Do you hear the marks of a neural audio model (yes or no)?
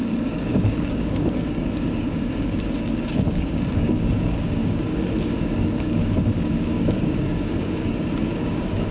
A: yes